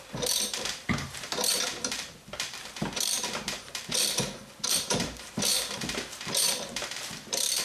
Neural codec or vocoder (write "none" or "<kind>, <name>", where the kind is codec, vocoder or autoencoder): vocoder, BigVGAN v2